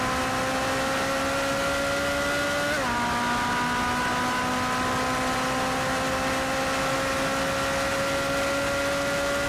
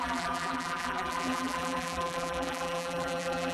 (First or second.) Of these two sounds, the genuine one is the first